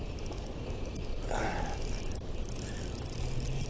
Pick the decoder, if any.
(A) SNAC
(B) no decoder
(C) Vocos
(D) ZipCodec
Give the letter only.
B